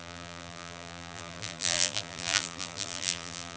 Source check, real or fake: fake